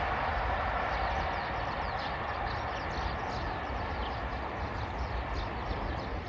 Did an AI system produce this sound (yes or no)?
no